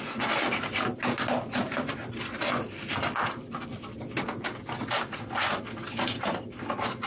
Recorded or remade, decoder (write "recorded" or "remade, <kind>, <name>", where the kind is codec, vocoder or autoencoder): recorded